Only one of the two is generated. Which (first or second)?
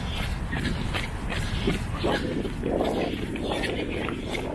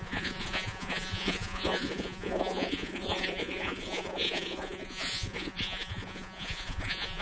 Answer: second